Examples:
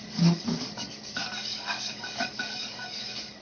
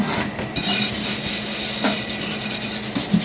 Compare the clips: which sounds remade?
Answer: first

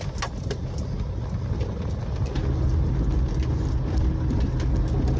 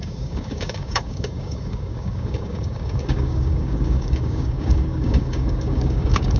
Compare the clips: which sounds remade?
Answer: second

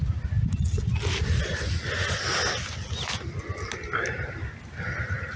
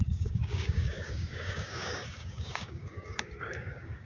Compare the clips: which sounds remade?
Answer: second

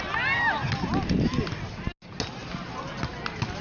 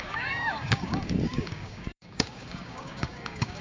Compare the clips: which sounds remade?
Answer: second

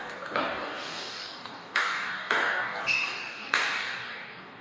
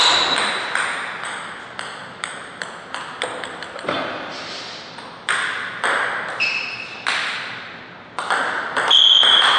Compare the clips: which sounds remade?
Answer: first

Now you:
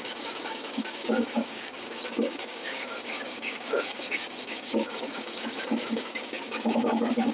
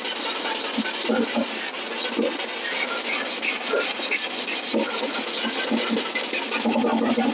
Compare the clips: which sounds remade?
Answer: first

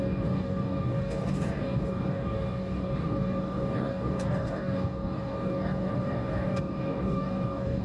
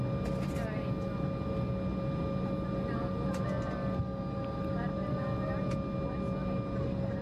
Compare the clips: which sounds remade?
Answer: first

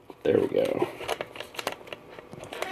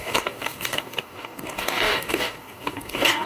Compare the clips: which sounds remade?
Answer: second